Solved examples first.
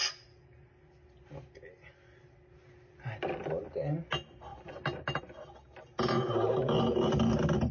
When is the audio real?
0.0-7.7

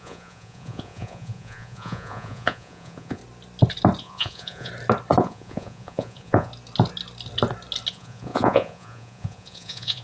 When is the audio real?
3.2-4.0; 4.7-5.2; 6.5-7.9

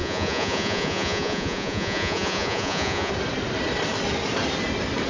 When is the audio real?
3.1-5.1